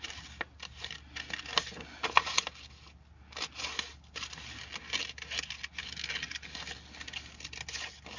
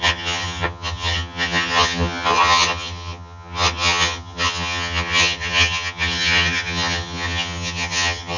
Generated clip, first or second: second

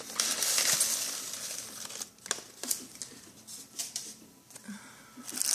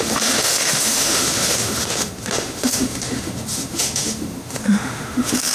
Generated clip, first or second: second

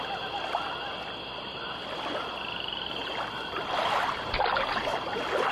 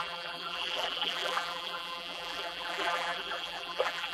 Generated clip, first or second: second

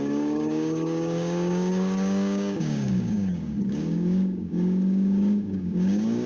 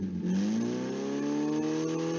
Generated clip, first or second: first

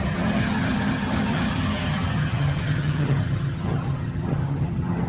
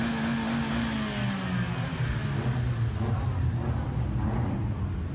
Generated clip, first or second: first